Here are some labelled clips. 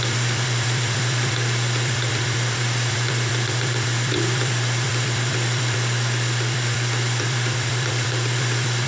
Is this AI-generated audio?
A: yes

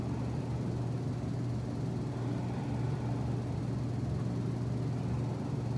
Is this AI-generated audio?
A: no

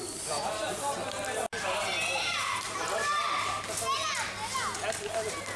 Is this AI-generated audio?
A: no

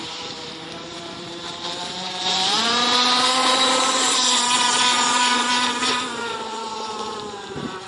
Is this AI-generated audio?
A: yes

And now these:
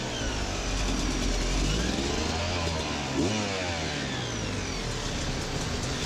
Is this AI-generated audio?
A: no